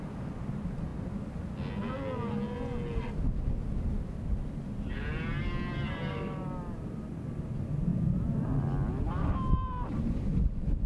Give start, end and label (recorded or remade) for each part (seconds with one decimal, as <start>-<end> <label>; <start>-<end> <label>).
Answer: 0.0-7.9 recorded; 7.9-8.4 remade; 8.4-10.9 recorded

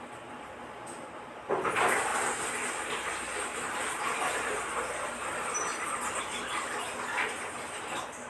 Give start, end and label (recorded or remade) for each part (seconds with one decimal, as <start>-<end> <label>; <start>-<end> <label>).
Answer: 0.0-2.1 recorded; 2.1-6.2 remade; 6.2-8.3 recorded

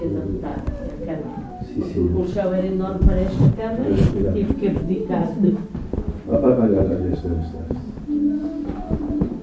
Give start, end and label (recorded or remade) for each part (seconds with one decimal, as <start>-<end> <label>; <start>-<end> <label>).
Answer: 0.0-3.8 recorded; 3.8-5.5 remade; 5.5-6.3 recorded; 6.3-7.2 remade; 7.2-9.4 recorded

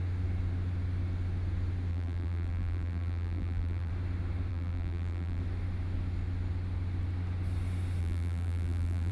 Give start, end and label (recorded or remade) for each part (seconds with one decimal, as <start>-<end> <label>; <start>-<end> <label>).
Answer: 0.0-1.9 recorded; 1.9-3.9 remade; 3.9-4.5 recorded; 4.5-5.4 remade; 5.4-8.0 recorded; 8.0-9.1 remade

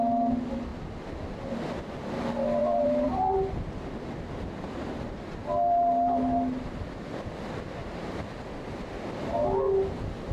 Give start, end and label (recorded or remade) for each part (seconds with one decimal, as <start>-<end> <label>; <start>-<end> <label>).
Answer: 0.0-2.6 recorded; 2.6-3.3 remade; 3.3-7.8 recorded; 7.8-8.3 remade; 8.3-10.3 recorded

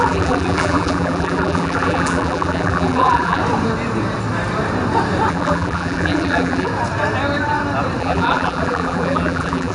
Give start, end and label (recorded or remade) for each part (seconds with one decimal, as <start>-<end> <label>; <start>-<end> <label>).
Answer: 0.0-3.4 remade; 3.4-5.3 recorded; 5.3-6.7 remade; 6.7-8.0 recorded; 8.0-9.7 remade

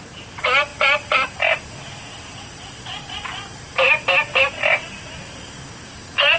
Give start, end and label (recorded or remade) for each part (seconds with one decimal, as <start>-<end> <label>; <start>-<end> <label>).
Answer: 0.0-6.4 recorded